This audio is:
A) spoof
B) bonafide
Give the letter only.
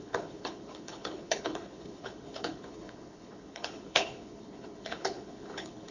A